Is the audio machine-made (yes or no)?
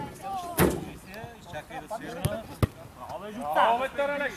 no